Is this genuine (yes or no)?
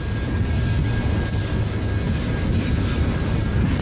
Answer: yes